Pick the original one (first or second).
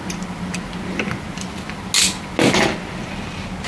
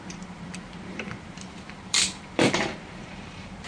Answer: first